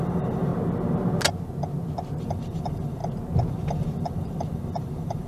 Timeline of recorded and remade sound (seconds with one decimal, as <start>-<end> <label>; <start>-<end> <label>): 0.0-0.5 remade; 0.5-2.2 recorded; 2.2-3.0 remade; 3.0-3.5 recorded; 3.5-5.3 remade